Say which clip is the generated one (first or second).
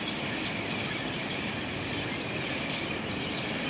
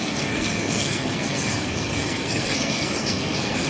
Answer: second